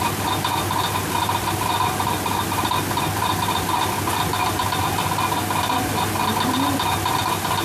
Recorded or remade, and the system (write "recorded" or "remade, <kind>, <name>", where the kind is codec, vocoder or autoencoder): recorded